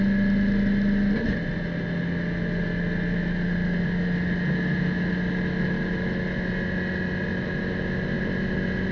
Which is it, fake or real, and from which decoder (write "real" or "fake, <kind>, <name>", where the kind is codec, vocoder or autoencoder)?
real